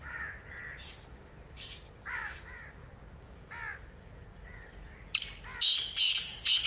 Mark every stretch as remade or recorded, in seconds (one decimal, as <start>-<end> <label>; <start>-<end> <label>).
0.0-6.7 recorded